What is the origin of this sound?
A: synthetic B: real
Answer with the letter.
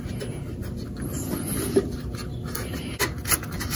B